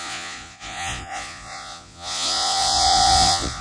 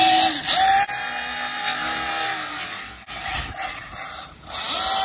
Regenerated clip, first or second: first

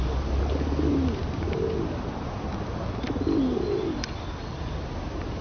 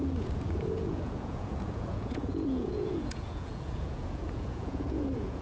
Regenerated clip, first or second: second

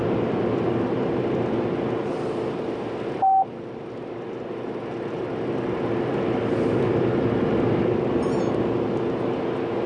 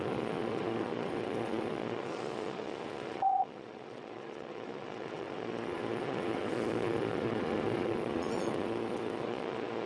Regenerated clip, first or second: second